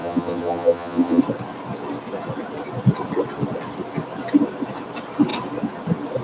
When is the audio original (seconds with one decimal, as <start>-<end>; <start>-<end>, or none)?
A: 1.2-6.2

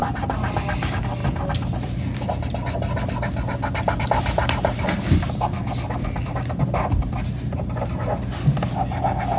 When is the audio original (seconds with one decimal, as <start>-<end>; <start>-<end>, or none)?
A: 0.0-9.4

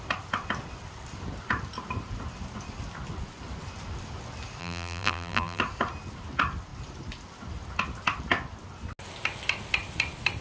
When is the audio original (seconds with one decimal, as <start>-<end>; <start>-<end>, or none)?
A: 0.0-4.6; 5.6-10.4